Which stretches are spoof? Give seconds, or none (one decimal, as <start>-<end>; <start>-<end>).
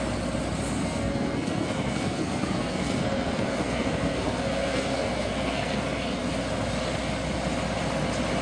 0.8-5.8